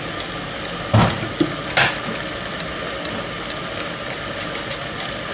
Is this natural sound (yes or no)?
yes